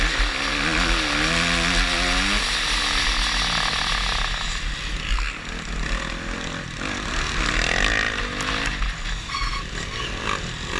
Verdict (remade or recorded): recorded